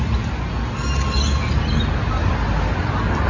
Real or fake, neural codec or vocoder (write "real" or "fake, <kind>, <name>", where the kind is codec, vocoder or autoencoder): real